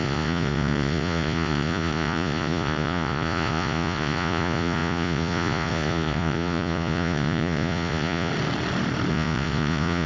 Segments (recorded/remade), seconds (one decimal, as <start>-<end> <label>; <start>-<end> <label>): 0.0-8.3 remade; 8.3-9.1 recorded; 9.1-10.1 remade